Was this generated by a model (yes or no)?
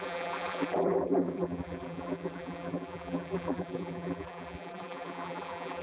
yes